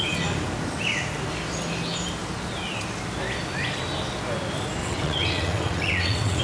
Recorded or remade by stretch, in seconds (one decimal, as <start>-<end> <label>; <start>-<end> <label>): 0.0-4.8 recorded; 4.8-6.4 remade